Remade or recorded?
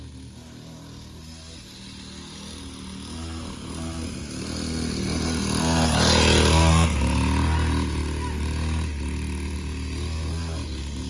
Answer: recorded